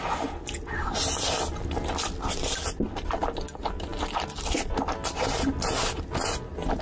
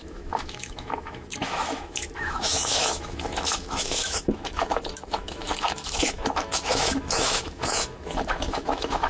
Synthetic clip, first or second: second